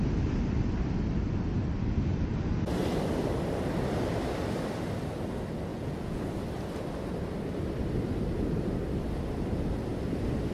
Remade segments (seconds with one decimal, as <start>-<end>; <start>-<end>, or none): 5.7-6.2